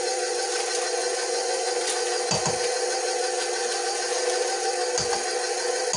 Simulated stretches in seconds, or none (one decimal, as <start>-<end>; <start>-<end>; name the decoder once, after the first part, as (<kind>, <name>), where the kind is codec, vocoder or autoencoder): 1.0-1.9 (vocoder, Vocos)